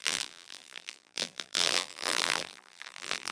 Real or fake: fake